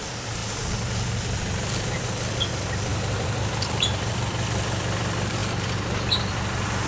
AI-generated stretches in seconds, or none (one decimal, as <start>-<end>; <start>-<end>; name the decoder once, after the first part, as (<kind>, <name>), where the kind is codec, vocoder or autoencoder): 2.9-4.1 (vocoder, BigVGAN v2)